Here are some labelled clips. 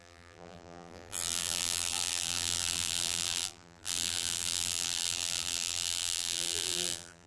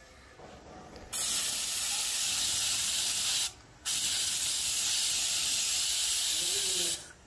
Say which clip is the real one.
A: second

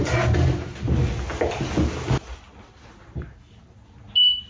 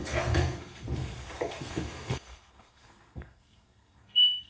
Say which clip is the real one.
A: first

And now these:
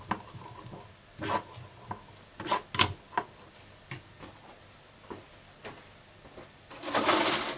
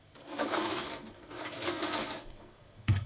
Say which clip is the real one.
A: first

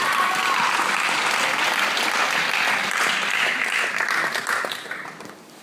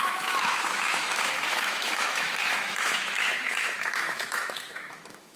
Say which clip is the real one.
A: first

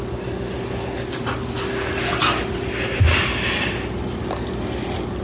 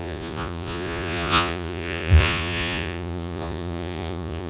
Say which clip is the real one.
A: first